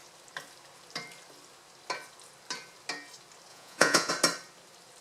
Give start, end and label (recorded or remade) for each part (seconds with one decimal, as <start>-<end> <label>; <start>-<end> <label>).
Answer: 0.0-3.5 recorded; 3.5-4.1 remade; 4.1-5.0 recorded